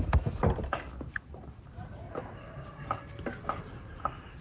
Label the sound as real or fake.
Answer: real